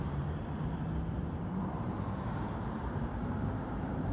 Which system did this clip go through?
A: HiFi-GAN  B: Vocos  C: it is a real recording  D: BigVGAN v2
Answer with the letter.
D